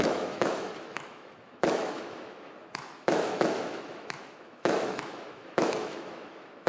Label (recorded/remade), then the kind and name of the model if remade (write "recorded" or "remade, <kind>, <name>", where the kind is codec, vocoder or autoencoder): remade, autoencoder, DAC-VAE